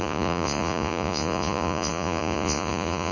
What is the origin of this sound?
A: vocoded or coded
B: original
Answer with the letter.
A